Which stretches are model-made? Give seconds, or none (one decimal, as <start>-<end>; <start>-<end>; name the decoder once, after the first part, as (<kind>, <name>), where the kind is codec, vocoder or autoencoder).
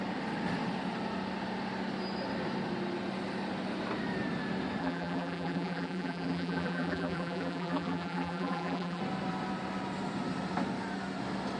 4.8-9.0 (vocoder, BigVGAN v2)